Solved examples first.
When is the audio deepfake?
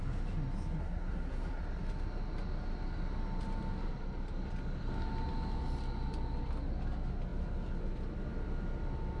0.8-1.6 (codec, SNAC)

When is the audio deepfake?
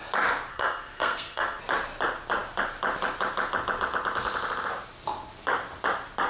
0.5-1.6 (codec, SNAC)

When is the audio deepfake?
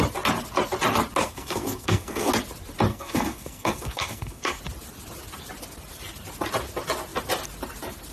1.2-2.3 (codec, SNAC); 2.9-4.6